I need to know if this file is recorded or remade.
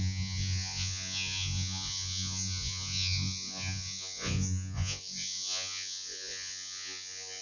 remade